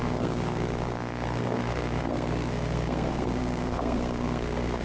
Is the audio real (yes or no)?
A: no